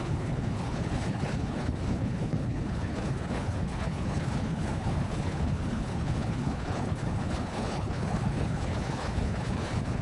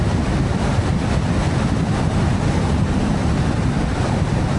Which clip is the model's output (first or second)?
first